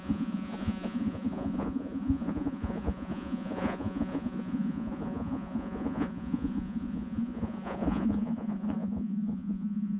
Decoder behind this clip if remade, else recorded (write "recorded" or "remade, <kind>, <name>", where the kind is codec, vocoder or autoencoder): remade, vocoder, Vocos